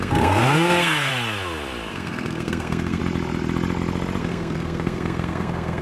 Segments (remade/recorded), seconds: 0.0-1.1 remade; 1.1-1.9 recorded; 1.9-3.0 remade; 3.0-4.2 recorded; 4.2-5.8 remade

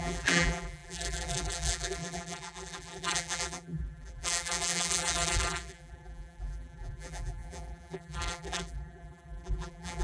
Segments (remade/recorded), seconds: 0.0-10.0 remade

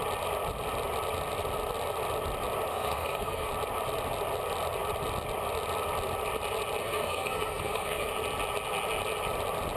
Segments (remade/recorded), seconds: 0.0-2.7 recorded; 2.7-3.5 remade; 3.5-6.8 recorded; 6.8-8.1 remade; 8.1-9.8 recorded